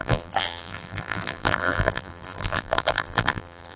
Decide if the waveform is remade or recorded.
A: remade